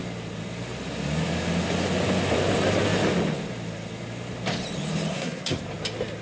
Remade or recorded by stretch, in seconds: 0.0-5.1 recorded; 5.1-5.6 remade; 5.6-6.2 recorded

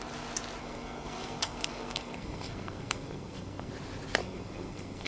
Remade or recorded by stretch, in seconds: 0.0-0.6 recorded; 0.6-3.7 remade; 3.7-4.2 recorded; 4.2-5.1 remade

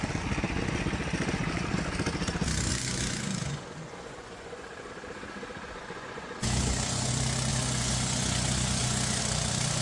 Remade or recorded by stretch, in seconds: 0.0-2.7 recorded; 2.7-4.9 remade; 4.9-5.5 recorded; 5.5-7.1 remade; 7.1-7.5 recorded; 7.5-9.2 remade; 9.2-9.8 recorded

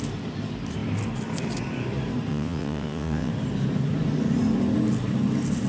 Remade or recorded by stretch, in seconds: 0.0-2.3 recorded; 2.3-3.3 remade; 3.3-5.7 recorded

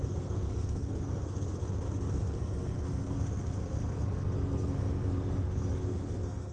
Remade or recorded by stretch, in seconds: 0.0-6.5 remade

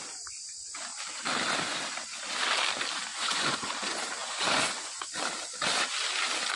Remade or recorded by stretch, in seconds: 0.0-3.1 recorded; 3.1-3.7 remade; 3.7-4.2 recorded; 4.2-5.1 remade; 5.1-6.6 recorded

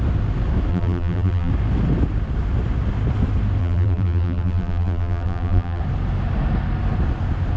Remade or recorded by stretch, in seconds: 0.0-0.7 recorded; 0.7-1.5 remade; 1.5-3.6 recorded; 3.6-5.8 remade; 5.8-7.6 recorded

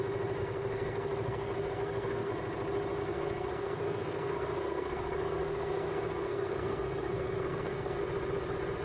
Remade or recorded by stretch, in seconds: 0.0-0.4 recorded; 0.4-2.3 remade; 2.3-3.0 recorded; 3.0-8.0 remade; 8.0-8.8 recorded